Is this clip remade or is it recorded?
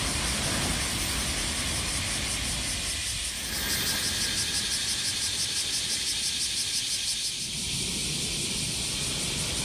recorded